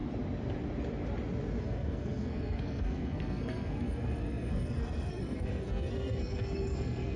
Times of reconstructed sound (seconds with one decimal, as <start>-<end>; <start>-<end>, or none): 1.6-7.2